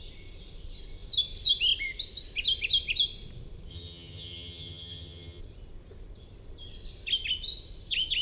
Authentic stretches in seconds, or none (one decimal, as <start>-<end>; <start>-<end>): 0.0-3.7; 5.4-8.2